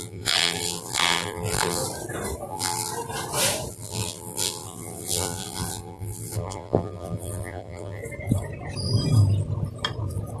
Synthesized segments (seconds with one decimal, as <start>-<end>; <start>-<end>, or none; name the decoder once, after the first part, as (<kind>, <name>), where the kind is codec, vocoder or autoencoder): 0.0-1.8 (vocoder, BigVGAN v2); 2.5-2.9; 3.7-8.0